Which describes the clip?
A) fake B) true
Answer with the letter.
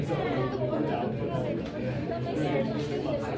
B